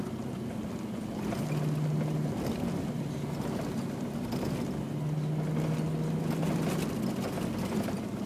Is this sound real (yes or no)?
yes